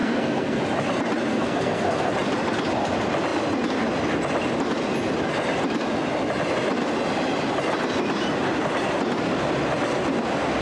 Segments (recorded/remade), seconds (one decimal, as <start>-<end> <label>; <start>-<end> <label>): 0.0-0.6 remade; 0.6-1.3 recorded; 1.3-2.1 remade; 2.1-10.6 recorded